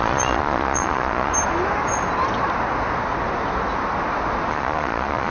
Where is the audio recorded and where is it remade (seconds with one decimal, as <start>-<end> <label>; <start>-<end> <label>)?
0.0-1.3 remade; 1.3-4.5 recorded; 4.5-5.3 remade